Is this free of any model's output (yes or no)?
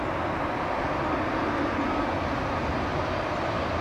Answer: yes